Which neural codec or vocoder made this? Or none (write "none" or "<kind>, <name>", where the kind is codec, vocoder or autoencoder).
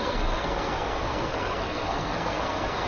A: codec, SNAC